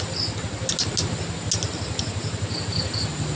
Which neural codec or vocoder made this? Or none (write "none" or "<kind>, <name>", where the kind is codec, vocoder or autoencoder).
none